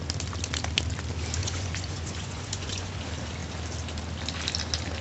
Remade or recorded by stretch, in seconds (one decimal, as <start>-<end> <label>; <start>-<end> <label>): 0.0-1.4 recorded; 1.4-3.0 remade; 3.0-5.0 recorded